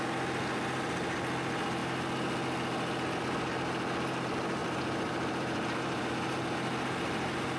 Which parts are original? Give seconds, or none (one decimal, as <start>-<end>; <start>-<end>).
0.0-4.6; 6.1-7.6